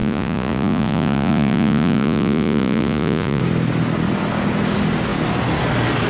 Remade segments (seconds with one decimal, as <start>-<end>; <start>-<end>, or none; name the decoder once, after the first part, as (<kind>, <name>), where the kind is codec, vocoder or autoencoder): 0.0-3.4 (vocoder, Vocos)